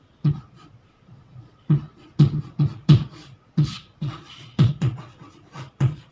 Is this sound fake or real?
fake